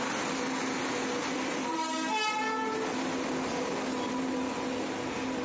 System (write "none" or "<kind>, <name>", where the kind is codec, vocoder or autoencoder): none